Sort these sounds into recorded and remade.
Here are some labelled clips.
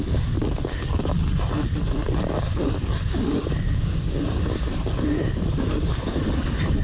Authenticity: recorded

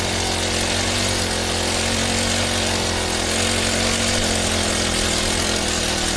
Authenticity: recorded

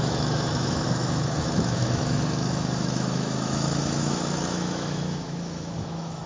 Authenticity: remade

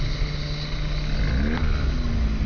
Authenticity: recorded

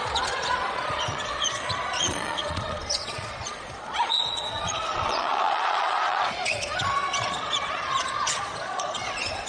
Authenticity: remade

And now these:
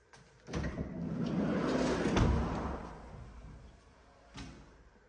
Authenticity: recorded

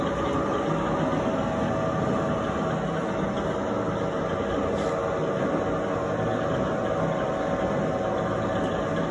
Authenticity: recorded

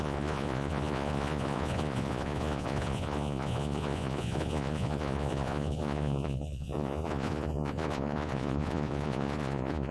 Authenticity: remade